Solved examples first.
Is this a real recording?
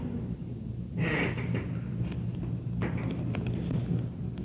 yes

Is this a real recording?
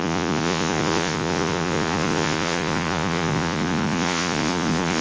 no